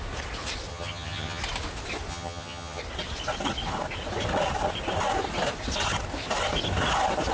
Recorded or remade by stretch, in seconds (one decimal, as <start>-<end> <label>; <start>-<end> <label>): 0.0-0.7 recorded; 0.7-1.4 remade; 1.4-2.1 recorded; 2.1-2.8 remade; 2.8-7.3 recorded